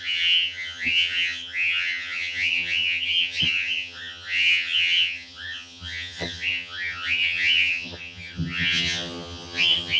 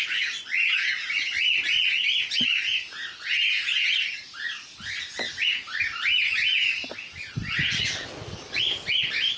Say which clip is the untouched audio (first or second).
second